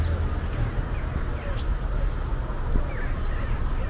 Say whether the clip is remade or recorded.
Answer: recorded